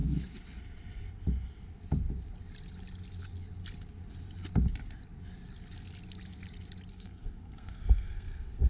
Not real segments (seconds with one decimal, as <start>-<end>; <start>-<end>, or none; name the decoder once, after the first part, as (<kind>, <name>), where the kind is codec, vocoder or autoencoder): 6.9-8.7 (codec, SNAC)